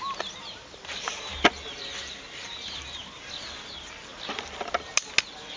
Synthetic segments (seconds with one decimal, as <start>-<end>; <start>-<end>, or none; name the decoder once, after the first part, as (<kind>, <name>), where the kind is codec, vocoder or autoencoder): none